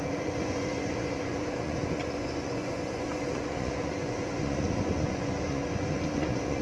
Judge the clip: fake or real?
fake